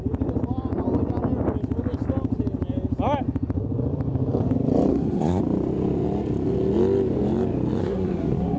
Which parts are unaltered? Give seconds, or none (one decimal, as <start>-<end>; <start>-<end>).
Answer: 0.0-4.9; 5.4-7.8